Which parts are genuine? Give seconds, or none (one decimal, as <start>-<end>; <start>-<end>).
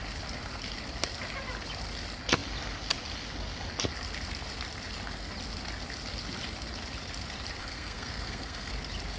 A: 0.0-7.6; 8.7-9.2